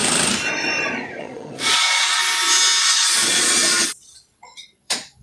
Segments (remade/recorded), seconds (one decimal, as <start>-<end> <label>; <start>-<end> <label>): 0.0-1.2 recorded; 1.2-2.2 remade; 2.2-2.8 recorded; 2.8-5.2 remade